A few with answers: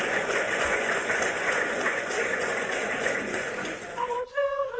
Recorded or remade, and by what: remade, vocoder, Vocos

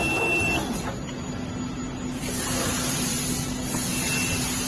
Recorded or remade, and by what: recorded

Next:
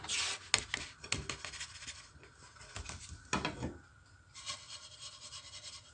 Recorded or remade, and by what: recorded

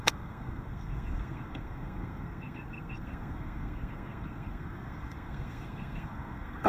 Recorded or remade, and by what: remade, codec, SNAC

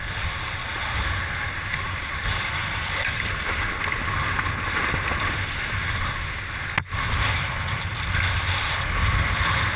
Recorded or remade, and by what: recorded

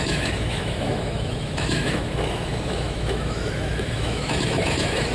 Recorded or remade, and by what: remade, autoencoder, DAC-VAE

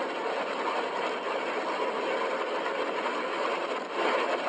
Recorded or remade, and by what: recorded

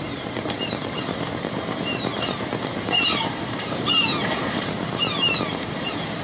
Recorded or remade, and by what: remade, vocoder, BigVGAN v2